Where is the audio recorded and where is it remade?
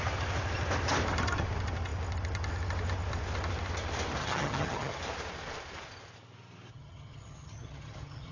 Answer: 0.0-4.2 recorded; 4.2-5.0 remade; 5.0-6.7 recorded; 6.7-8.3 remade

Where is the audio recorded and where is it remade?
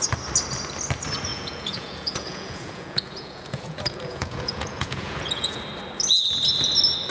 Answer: 0.0-1.3 recorded; 1.3-5.6 remade; 5.6-7.1 recorded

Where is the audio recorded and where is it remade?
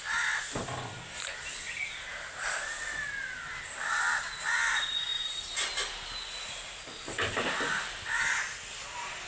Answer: 0.0-9.3 recorded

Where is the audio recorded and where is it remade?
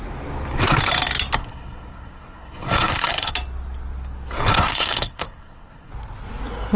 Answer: 0.0-1.4 recorded; 1.4-3.3 remade; 3.3-4.5 recorded; 4.5-5.9 remade; 5.9-6.8 recorded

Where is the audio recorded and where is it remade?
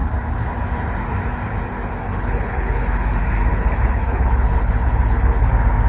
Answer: 0.0-2.0 recorded; 2.0-3.1 remade; 3.1-3.5 recorded; 3.5-5.5 remade; 5.5-5.9 recorded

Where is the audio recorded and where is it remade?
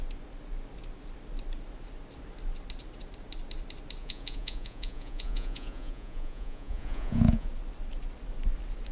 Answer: 0.0-4.0 recorded; 4.0-7.5 remade; 7.5-8.9 recorded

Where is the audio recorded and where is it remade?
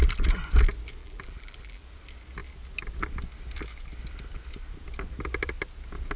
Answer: 0.0-1.0 recorded; 1.0-1.8 remade; 1.8-6.2 recorded